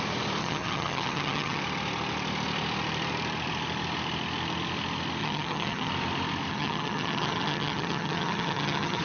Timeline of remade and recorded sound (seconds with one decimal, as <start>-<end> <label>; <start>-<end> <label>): 0.0-0.4 recorded; 0.4-1.6 remade; 1.6-5.2 recorded; 5.2-5.9 remade; 5.9-6.5 recorded; 6.5-9.0 remade